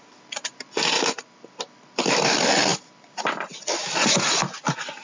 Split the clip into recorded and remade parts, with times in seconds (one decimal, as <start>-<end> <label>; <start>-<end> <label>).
0.0-2.7 recorded; 2.7-3.5 remade; 3.5-5.0 recorded